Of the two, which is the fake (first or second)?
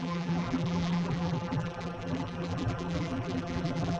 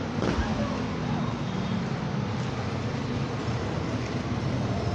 first